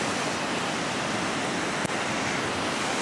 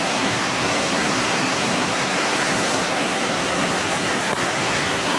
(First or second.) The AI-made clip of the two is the second